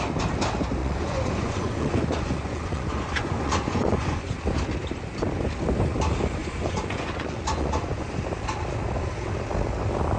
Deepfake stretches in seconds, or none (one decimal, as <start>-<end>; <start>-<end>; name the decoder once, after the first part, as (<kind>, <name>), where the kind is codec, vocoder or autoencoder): 0.8-4.3 (vocoder, Vocos); 6.4-8.1